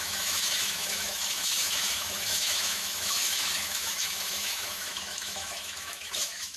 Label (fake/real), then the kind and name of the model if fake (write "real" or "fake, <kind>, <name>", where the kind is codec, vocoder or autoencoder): fake, autoencoder, DAC-VAE